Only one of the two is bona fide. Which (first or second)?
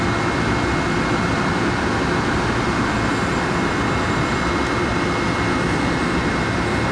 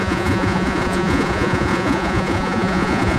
first